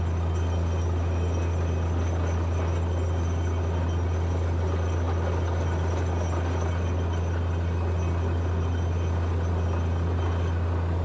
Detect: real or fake real